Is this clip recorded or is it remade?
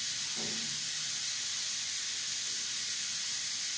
recorded